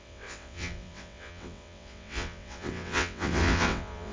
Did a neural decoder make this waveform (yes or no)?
yes